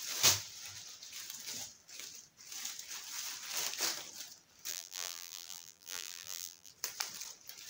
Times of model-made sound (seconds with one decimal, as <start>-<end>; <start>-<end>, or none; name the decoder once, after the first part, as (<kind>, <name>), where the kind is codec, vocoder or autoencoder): 4.7-6.7 (vocoder, BigVGAN v2)

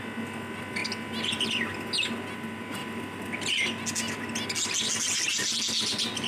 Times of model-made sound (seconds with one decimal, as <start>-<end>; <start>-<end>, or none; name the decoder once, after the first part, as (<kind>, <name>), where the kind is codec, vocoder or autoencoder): none

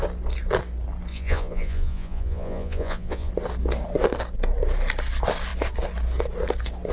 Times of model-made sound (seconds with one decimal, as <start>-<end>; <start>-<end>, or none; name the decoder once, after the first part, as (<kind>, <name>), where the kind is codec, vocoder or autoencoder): 1.1-3.3 (vocoder, Vocos)

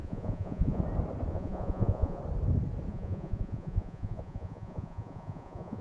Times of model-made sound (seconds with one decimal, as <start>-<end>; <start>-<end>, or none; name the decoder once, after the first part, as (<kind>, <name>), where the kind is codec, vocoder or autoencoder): 0.0-0.8 (vocoder, Vocos); 1.3-2.2; 2.9-5.8

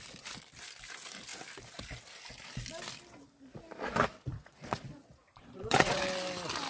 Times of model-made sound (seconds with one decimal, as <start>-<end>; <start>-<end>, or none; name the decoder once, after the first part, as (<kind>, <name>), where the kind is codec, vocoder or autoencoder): 4.3-6.0 (vocoder, Vocos)

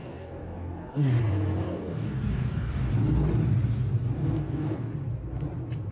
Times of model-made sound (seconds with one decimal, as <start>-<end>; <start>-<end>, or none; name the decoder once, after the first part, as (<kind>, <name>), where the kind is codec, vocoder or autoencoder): 0.0-1.2 (codec, DAC); 1.6-2.9; 4.2-4.9